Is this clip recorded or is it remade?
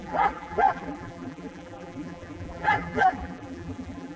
remade